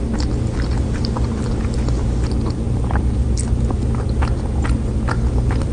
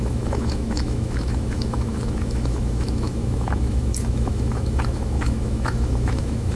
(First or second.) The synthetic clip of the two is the second